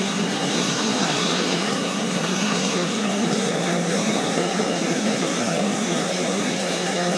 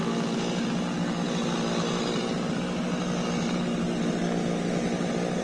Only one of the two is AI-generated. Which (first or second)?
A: first